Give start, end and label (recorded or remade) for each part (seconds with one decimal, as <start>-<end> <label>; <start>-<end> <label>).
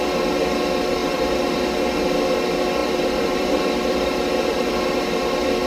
0.0-1.0 recorded; 1.0-1.6 remade; 1.6-2.8 recorded; 2.8-4.7 remade; 4.7-5.7 recorded